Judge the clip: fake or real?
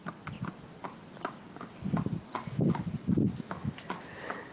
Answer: real